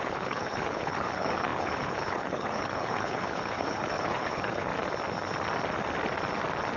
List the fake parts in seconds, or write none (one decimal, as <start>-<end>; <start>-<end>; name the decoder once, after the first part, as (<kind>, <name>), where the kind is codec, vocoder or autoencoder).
0.0-4.7 (codec, HILCodec)